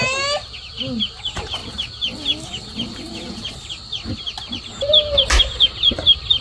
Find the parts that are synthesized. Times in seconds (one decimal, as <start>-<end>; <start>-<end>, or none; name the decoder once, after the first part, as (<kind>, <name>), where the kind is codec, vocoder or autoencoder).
none